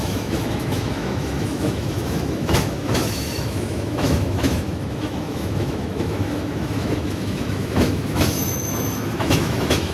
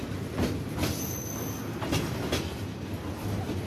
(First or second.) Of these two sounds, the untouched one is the second